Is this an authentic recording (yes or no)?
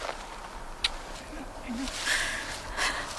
yes